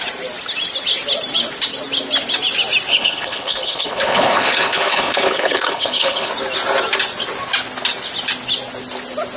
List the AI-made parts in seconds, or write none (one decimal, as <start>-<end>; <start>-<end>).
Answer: 2.9-6.3